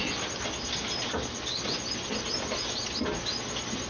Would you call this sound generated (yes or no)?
no